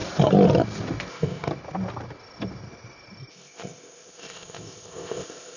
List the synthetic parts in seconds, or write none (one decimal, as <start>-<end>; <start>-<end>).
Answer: 1.1-1.5; 3.3-5.6